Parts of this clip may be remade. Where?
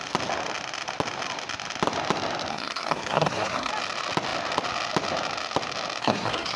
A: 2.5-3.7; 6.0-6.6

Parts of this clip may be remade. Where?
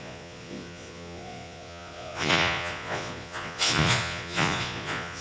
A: 0.0-5.2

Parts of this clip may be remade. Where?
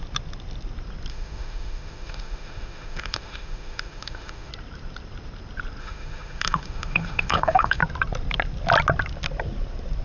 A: 1.1-4.5; 5.8-7.8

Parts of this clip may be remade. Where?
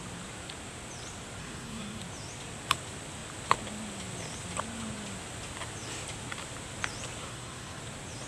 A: 1.4-2.0; 7.2-7.8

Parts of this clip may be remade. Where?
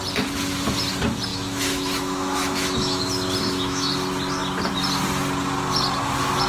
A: 1.3-3.0; 3.4-3.9